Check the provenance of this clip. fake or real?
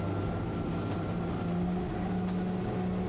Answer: real